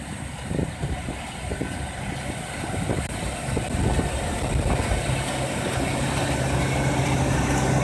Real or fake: real